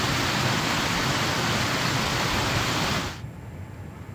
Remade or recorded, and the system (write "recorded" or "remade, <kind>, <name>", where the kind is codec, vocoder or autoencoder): recorded